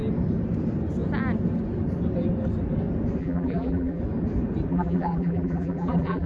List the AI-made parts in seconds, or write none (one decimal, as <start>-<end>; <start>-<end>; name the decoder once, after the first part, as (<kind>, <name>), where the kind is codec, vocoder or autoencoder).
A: 3.2-4.0 (vocoder, BigVGAN v2); 4.7-6.3